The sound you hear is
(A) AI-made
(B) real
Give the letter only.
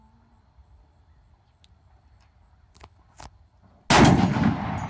B